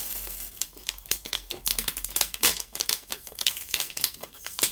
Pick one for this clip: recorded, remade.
remade